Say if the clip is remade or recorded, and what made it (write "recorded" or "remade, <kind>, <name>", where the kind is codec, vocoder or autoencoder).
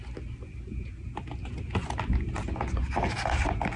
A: recorded